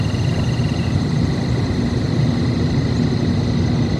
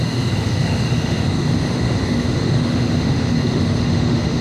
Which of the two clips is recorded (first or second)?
first